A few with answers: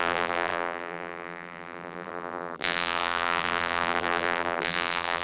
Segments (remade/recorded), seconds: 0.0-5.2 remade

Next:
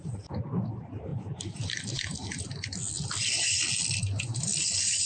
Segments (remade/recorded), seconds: 0.0-5.1 recorded

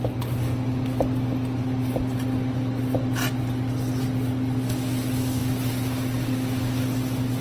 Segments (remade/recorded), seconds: 0.0-7.4 recorded

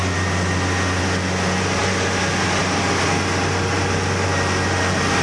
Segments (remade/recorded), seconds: 0.0-5.2 recorded

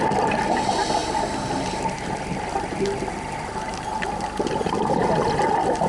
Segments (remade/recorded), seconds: 0.0-5.9 recorded

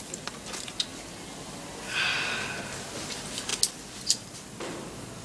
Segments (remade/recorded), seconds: 0.0-5.2 recorded